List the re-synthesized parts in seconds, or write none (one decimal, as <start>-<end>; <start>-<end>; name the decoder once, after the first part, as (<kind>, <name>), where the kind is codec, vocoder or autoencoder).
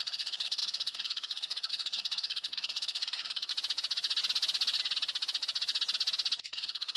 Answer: 0.0-3.5 (codec, SNAC); 6.4-7.0